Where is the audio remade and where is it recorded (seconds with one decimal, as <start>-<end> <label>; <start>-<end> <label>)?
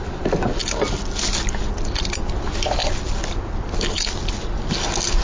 0.0-5.2 recorded